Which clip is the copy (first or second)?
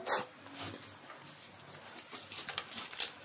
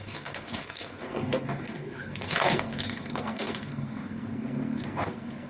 second